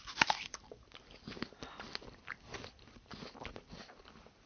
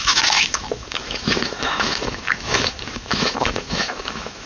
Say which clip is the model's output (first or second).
second